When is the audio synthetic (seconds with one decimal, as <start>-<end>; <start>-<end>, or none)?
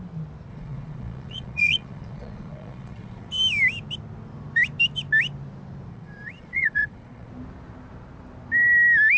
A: 0.5-3.3; 5.9-7.3